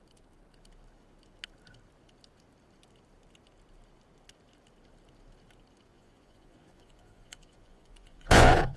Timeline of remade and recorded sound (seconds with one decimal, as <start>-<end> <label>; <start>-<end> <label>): 0.0-5.9 recorded; 5.9-8.8 remade